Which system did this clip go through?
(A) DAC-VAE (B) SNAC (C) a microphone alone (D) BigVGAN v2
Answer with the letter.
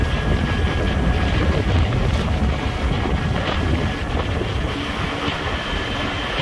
C